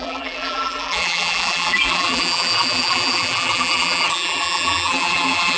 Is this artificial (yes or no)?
yes